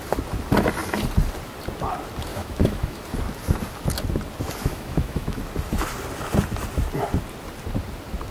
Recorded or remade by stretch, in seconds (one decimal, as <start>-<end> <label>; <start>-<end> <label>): 0.0-2.3 recorded; 2.3-3.0 remade; 3.0-4.6 recorded; 4.6-5.4 remade; 5.4-8.3 recorded